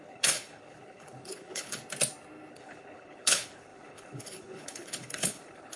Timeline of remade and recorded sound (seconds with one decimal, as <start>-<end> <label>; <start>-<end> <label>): 0.0-1.8 remade; 1.8-2.5 recorded; 2.5-5.8 remade